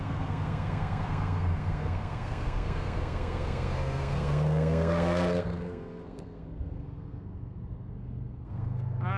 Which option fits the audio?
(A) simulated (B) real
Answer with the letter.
A